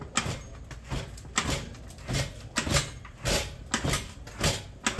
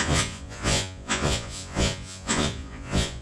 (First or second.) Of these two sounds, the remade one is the second